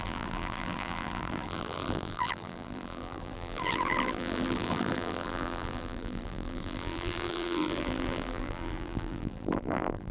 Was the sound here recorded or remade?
remade